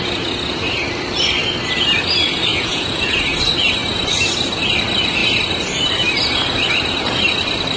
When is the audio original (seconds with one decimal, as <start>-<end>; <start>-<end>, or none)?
0.0-2.5; 3.1-7.8